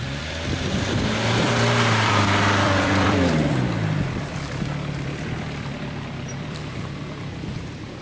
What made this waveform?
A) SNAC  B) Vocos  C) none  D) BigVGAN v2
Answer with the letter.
D